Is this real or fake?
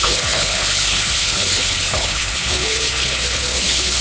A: fake